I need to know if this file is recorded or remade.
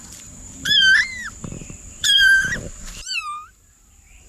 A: remade